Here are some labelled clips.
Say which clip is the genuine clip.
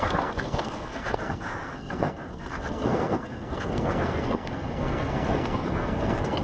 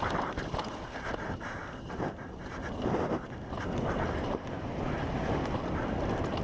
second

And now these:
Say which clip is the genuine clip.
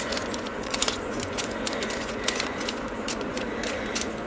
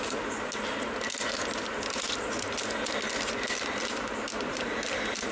second